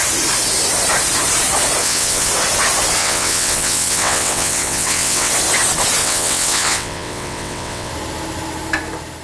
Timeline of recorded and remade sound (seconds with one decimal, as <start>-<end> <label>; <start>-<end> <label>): 0.0-1.8 recorded; 1.8-2.3 remade; 2.3-3.0 recorded; 3.0-5.3 remade; 5.3-6.0 recorded; 6.0-7.9 remade; 7.9-9.2 recorded